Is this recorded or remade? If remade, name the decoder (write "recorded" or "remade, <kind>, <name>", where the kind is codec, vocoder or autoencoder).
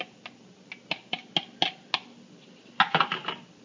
recorded